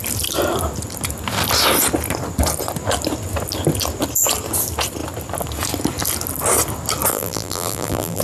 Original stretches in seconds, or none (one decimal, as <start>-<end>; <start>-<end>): 0.0-7.1